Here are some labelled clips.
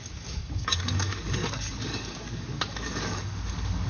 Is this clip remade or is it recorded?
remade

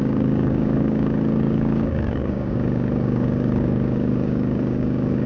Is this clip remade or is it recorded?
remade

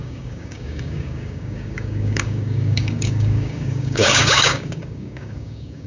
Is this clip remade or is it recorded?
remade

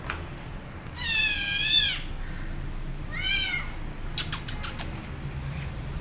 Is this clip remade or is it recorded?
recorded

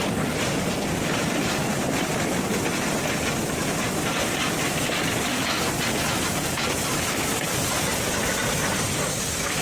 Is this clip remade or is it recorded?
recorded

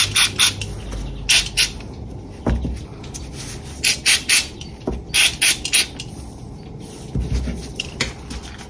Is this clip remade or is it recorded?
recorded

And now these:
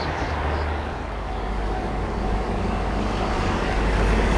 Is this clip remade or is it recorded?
remade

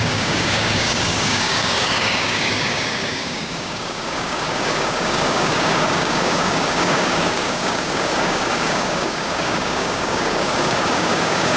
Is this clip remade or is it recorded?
remade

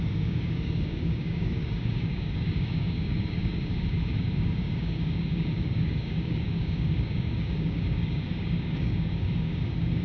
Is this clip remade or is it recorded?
remade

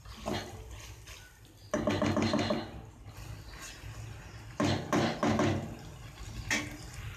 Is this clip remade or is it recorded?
recorded